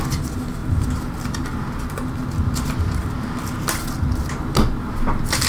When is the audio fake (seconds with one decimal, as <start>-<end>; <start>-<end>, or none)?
none